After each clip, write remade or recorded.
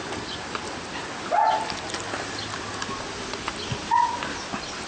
recorded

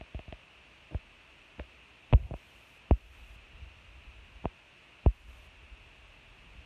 recorded